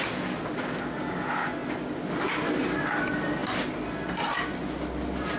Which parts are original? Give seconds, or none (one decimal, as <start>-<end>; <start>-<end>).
0.0-5.4